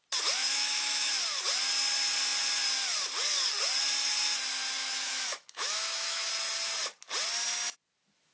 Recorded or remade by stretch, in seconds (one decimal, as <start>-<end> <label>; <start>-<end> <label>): 0.0-0.4 recorded; 0.4-1.1 remade; 1.1-4.8 recorded; 4.8-6.3 remade; 6.3-8.3 recorded